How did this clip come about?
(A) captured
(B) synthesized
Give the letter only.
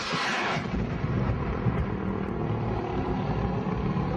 A